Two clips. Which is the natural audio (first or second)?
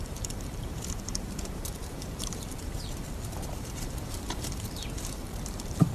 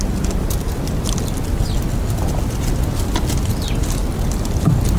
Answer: second